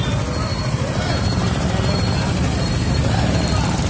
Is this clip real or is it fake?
real